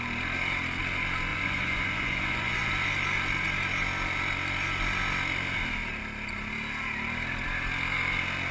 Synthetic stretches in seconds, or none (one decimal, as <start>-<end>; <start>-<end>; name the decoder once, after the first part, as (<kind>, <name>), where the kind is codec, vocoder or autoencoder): 1.3-2.7 (vocoder, Vocos)